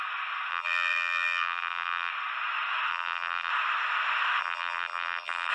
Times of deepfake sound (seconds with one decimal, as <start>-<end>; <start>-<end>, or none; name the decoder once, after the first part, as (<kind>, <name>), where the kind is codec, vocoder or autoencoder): 0.5-2.1 (vocoder, BigVGAN v2); 2.9-3.5; 4.4-5.5